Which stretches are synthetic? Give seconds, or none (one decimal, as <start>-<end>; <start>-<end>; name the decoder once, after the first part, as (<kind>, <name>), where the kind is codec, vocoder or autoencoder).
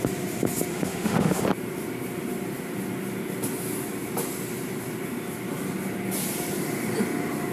0.7-1.4 (autoencoder, DAC-VAE)